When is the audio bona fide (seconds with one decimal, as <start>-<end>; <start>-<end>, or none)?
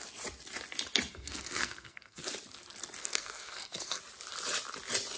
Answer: 0.0-1.1; 2.2-3.0; 4.0-5.2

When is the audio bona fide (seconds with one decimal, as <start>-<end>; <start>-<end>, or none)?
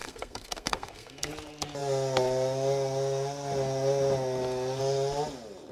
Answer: 1.3-5.7